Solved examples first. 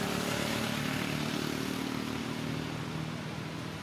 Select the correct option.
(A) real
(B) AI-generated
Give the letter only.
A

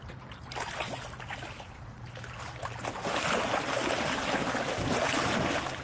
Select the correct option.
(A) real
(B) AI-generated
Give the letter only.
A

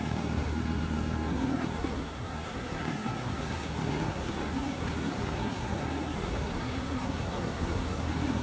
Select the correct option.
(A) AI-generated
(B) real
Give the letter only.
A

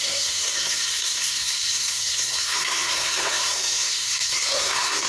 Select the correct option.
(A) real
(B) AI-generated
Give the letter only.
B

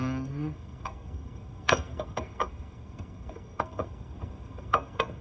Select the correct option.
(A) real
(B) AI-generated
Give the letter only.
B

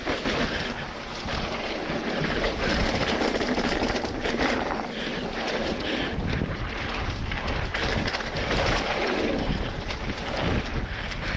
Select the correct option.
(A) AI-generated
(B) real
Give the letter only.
B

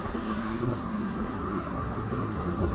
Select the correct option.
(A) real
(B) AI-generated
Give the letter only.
B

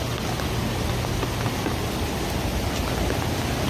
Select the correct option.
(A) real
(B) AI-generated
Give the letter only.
A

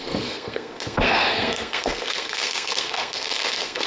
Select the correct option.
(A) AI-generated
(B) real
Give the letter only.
A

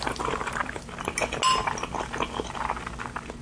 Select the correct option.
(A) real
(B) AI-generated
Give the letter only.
A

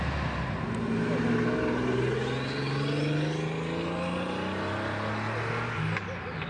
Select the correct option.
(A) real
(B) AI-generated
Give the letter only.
A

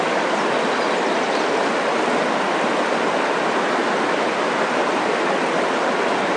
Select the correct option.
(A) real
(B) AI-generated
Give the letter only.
A